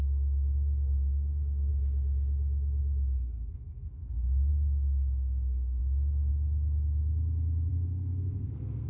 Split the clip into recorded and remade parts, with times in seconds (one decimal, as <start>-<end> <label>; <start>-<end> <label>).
0.0-1.7 remade; 1.7-3.5 recorded; 3.5-6.3 remade; 6.3-7.7 recorded; 7.7-8.9 remade